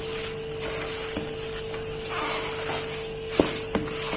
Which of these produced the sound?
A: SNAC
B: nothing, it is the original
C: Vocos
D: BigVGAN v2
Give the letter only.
B